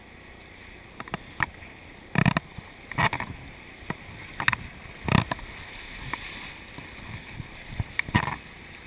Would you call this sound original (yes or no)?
yes